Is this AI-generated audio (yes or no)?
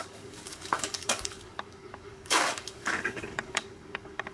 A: yes